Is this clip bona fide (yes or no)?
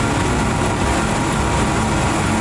yes